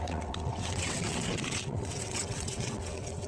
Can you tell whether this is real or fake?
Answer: fake